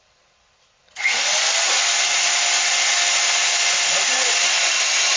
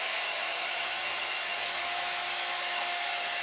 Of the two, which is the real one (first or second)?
first